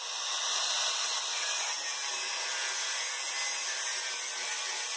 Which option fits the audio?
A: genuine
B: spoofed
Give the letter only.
A